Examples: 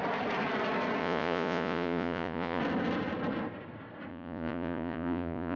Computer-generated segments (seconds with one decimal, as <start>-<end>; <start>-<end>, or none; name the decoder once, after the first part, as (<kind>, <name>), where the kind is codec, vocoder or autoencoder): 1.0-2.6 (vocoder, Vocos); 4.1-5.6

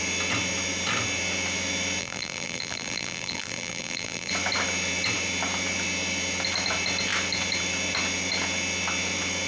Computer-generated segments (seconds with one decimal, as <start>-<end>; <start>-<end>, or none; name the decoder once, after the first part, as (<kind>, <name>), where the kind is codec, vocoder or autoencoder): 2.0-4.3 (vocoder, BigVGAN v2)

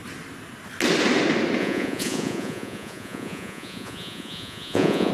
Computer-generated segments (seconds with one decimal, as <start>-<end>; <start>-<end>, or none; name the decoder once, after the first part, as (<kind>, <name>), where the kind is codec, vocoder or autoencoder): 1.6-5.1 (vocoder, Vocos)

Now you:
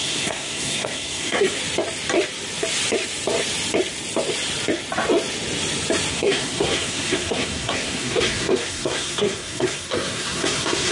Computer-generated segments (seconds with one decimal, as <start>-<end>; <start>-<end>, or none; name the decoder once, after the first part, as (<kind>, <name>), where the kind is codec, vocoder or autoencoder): 0.0-1.6 (codec, SNAC); 6.1-10.9

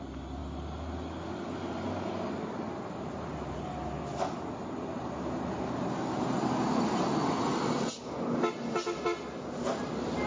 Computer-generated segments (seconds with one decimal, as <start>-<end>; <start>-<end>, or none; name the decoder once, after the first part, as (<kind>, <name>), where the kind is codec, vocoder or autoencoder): none